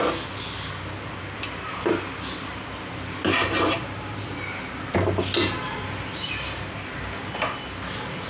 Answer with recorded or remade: recorded